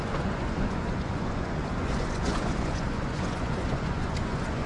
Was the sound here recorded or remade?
remade